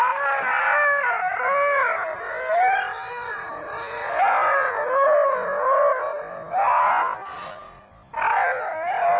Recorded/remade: recorded